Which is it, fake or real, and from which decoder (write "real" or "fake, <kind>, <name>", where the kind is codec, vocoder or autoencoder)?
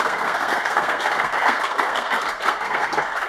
fake, codec, SNAC